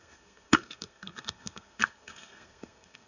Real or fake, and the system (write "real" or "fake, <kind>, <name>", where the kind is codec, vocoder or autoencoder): fake, codec, SNAC